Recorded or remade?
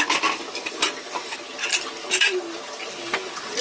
recorded